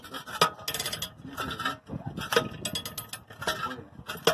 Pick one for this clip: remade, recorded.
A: recorded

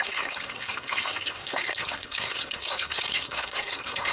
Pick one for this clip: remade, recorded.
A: remade